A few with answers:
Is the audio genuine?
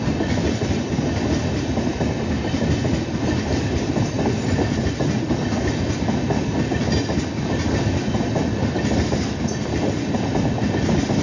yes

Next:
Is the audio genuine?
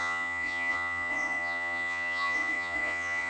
no